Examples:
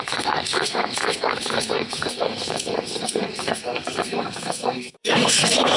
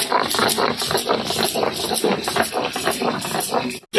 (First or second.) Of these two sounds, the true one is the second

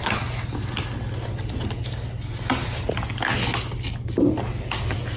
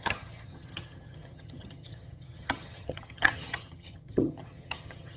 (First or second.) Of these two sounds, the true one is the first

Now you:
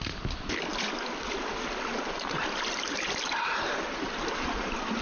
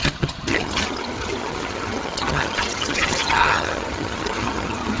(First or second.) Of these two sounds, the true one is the first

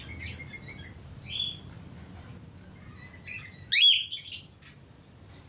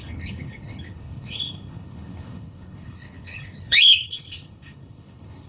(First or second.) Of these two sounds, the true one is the first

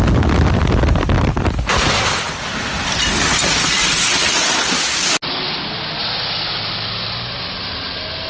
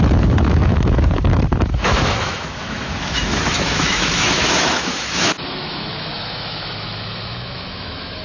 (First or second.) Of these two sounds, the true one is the first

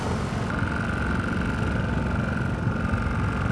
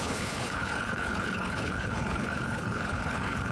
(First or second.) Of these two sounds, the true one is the first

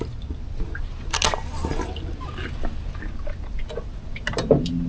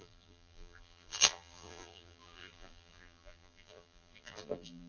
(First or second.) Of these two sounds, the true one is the first